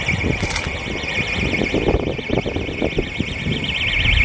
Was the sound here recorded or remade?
recorded